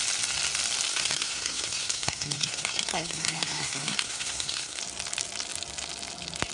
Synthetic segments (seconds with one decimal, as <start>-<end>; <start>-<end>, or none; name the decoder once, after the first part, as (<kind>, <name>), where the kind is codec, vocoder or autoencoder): 0.9-4.8 (codec, SNAC)